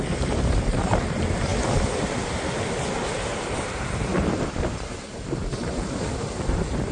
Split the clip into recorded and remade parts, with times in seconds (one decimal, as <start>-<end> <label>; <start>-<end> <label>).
0.0-1.5 remade; 1.5-2.0 recorded; 2.0-4.1 remade; 4.1-4.7 recorded; 4.7-6.9 remade